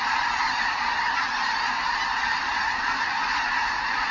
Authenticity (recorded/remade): remade